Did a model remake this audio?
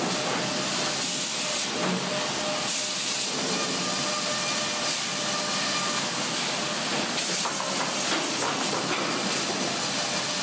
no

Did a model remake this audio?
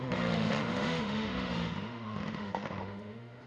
yes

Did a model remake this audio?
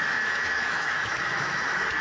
yes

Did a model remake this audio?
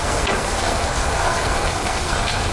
yes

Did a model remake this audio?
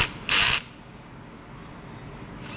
no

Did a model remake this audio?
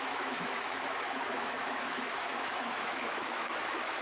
yes